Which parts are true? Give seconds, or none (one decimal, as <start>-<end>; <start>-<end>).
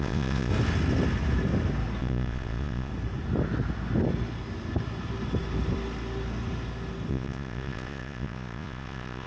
0.5-2.0; 2.9-7.1